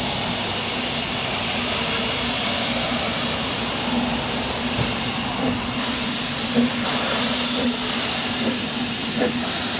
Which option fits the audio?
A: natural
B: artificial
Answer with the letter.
B